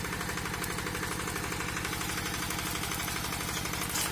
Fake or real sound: real